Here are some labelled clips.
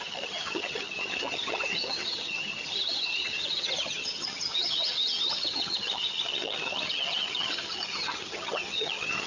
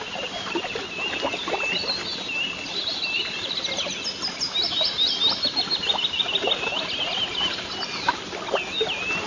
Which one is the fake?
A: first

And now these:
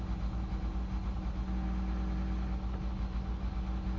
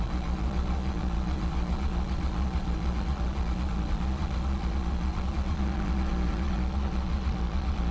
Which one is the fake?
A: second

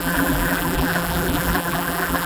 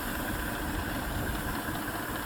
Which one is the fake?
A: first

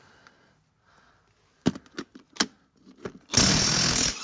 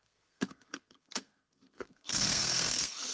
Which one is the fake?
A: second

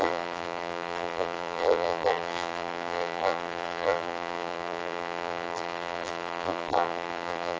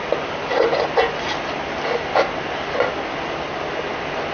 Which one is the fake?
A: first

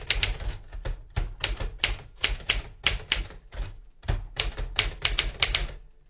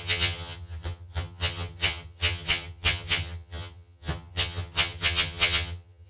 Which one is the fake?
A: second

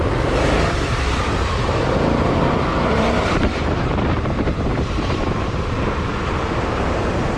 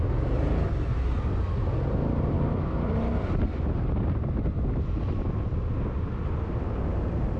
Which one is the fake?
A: first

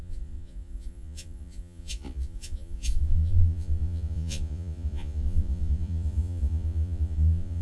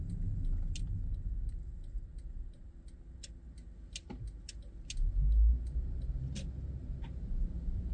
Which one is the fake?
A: first